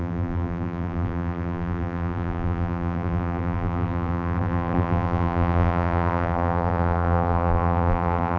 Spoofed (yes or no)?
yes